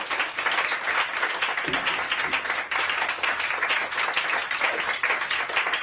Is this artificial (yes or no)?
no